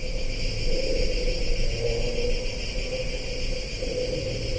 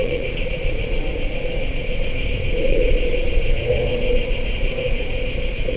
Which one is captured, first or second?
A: first